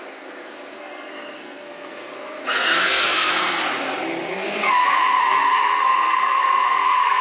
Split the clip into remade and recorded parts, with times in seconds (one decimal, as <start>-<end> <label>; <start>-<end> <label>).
0.0-3.6 remade; 3.6-4.3 recorded; 4.3-7.2 remade